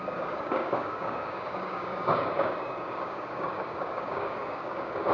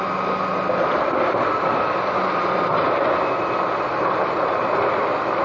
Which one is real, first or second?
second